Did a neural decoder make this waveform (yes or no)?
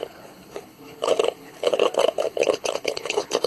yes